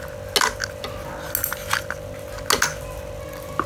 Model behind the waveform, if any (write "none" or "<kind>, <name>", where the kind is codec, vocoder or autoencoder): none